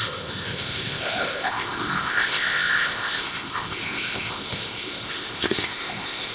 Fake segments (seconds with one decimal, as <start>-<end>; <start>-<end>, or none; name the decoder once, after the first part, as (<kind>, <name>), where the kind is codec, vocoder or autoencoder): 0.0-6.3 (codec, ZipCodec)